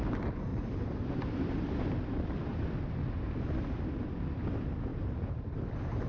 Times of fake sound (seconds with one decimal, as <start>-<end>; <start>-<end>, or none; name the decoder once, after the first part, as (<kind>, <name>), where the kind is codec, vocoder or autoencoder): 0.5-1.3 (vocoder, BigVGAN v2); 4.9-5.4

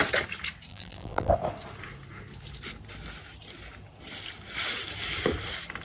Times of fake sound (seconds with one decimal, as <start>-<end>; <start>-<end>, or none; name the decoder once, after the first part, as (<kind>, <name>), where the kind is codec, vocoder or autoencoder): 0.7-1.3 (vocoder, BigVGAN v2)

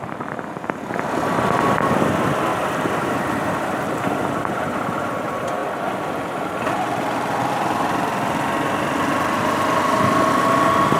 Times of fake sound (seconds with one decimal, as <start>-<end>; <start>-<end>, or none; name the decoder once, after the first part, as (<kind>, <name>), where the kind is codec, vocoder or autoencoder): 2.5-4.8 (vocoder, BigVGAN v2); 5.6-7.5

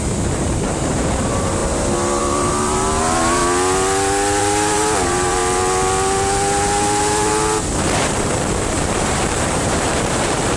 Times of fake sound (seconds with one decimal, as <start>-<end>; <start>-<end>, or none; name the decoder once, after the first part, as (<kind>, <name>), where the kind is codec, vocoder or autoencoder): 0.0-3.4 (vocoder, BigVGAN v2); 4.4-5.4; 7.0-10.6

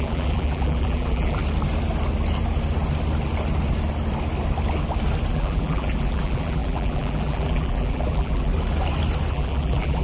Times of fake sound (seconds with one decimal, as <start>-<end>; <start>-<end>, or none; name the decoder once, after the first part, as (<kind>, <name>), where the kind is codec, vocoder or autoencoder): 0.0-1.4 (vocoder, BigVGAN v2); 5.3-8.5; 9.3-10.0

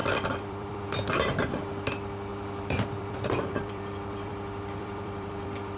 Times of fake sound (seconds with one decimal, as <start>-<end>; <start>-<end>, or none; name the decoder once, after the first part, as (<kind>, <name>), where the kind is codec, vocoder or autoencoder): 0.0-0.8 (vocoder, BigVGAN v2); 2.3-5.8

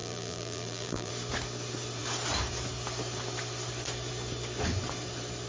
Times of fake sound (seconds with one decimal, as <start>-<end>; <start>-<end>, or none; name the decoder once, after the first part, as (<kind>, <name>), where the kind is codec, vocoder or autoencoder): 0.0-1.1 (vocoder, BigVGAN v2)